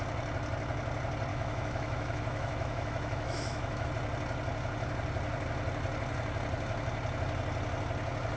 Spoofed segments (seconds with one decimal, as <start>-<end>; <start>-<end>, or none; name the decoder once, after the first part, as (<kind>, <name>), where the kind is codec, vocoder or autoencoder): 1.3-3.9 (autoencoder, DAC-VAE)